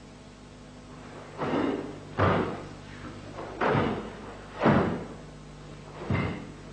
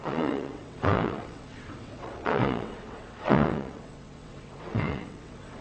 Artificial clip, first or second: second